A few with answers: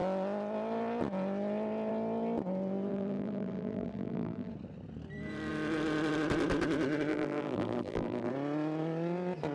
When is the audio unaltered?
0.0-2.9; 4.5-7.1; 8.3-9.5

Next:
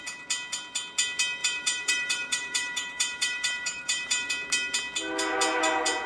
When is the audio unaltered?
0.0-1.4; 4.3-6.1

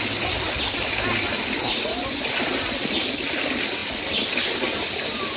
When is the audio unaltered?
0.0-5.4

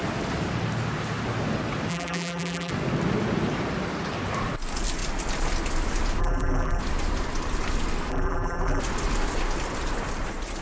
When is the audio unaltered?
0.0-1.9; 2.7-6.2; 6.8-8.1; 8.8-10.6

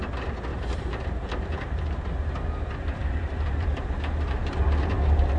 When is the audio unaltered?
0.0-0.5; 1.8-3.0; 3.7-5.4

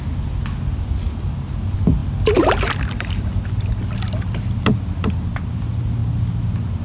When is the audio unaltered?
0.0-6.8

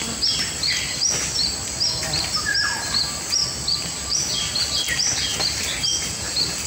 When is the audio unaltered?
0.0-3.4; 4.7-5.3